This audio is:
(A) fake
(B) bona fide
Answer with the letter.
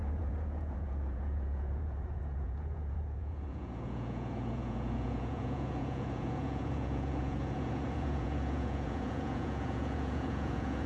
A